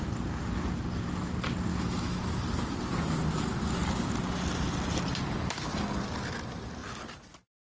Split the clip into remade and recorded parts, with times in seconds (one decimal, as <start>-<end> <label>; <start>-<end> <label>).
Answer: 0.0-1.7 recorded; 1.7-2.2 remade; 2.2-7.7 recorded

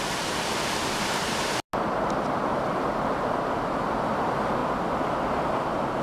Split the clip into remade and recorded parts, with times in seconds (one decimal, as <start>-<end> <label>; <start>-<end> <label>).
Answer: 0.0-6.0 recorded

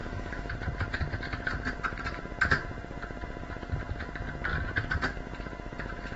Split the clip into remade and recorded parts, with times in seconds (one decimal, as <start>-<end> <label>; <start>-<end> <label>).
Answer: 0.0-0.5 remade; 0.5-6.2 recorded

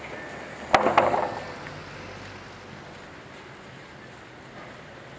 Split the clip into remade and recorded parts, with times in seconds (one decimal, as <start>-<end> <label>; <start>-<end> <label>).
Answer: 0.0-5.2 recorded